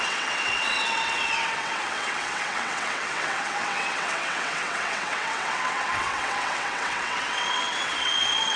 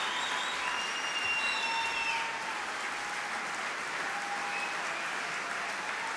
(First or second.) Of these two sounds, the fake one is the first